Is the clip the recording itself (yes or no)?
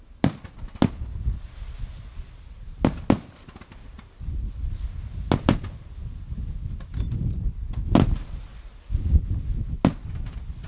yes